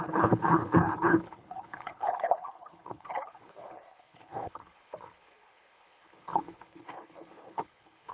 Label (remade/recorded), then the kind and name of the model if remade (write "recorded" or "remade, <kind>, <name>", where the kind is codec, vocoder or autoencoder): remade, codec, HILCodec